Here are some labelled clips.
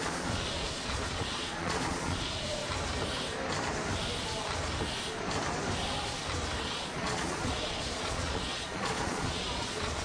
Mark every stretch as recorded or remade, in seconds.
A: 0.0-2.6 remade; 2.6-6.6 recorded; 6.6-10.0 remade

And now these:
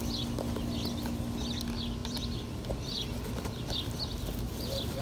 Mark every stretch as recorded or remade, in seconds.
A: 0.0-2.0 recorded; 2.0-5.0 remade

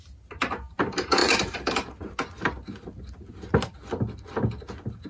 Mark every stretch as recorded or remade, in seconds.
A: 0.0-1.2 recorded; 1.2-1.9 remade; 1.9-5.1 recorded

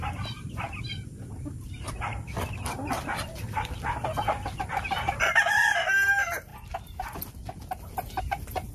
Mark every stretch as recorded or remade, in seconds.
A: 0.0-8.7 recorded

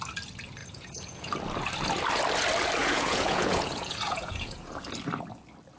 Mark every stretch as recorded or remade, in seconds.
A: 0.0-0.6 recorded; 0.6-1.3 remade; 1.3-2.8 recorded; 2.8-4.7 remade; 4.7-5.8 recorded